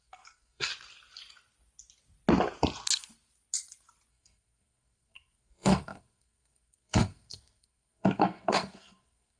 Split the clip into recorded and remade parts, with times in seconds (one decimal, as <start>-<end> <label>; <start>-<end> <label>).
0.0-0.7 remade; 0.7-4.1 recorded; 4.1-9.4 remade

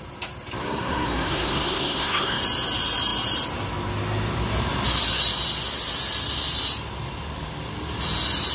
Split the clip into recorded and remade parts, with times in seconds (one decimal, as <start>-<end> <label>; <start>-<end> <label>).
0.0-0.6 recorded; 0.6-2.4 remade; 2.4-8.5 recorded

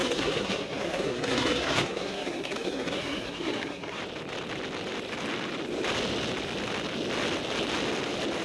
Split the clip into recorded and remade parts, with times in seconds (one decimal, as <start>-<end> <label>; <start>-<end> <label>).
0.0-4.0 remade; 4.0-8.4 recorded

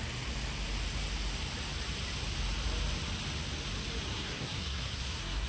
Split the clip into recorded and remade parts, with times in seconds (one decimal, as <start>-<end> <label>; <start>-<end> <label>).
0.0-4.1 recorded; 4.1-5.5 remade

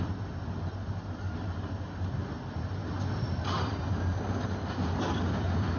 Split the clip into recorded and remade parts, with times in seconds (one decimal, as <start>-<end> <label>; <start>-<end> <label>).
0.0-5.8 recorded

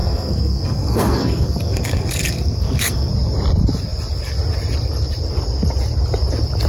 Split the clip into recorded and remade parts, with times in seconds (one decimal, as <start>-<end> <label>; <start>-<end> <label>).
0.0-3.1 remade; 3.1-6.7 recorded

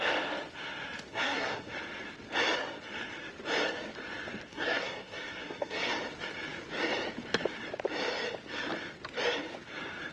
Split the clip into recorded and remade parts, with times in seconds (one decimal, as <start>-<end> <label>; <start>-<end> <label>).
0.0-1.1 recorded; 1.1-1.7 remade; 1.7-4.5 recorded; 4.5-5.9 remade; 5.9-10.1 recorded